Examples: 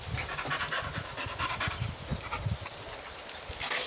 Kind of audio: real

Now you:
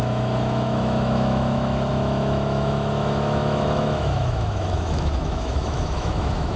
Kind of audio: fake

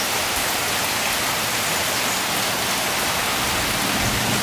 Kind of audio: real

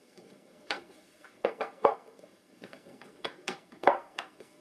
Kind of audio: fake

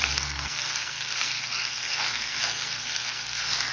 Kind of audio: fake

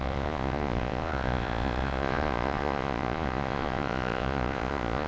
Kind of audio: fake